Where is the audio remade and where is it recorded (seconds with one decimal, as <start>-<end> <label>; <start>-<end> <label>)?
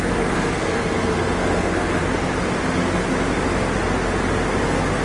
0.0-2.0 remade; 2.0-4.6 recorded; 4.6-5.0 remade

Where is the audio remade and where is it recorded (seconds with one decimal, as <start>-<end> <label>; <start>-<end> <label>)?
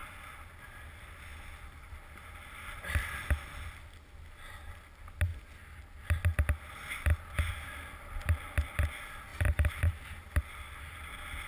0.0-9.3 recorded; 9.3-10.5 remade; 10.5-11.5 recorded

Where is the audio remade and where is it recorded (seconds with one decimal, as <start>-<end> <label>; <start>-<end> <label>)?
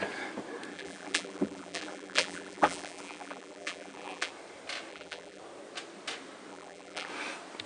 0.0-0.7 recorded; 0.7-4.3 remade; 4.3-4.9 recorded; 4.9-5.4 remade; 5.4-6.5 recorded; 6.5-7.1 remade; 7.1-7.7 recorded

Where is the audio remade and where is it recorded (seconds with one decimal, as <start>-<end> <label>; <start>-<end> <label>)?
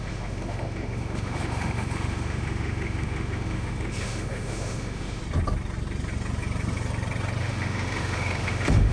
0.0-5.2 remade; 5.2-7.4 recorded; 7.4-8.9 remade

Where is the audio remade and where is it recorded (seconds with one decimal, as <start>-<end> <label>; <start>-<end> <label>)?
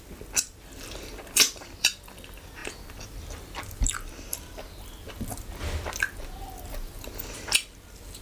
0.0-8.2 recorded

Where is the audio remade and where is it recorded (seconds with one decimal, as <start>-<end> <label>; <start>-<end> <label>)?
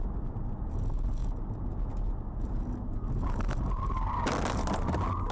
0.0-5.3 recorded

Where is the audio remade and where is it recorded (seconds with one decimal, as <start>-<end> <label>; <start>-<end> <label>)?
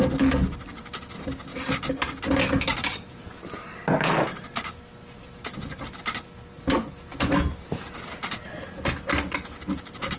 0.0-5.2 recorded; 5.2-5.8 remade; 5.8-10.2 recorded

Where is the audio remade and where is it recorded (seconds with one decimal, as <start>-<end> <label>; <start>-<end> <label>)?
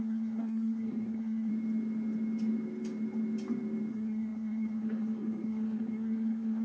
0.0-1.5 remade; 1.5-3.9 recorded; 3.9-6.6 remade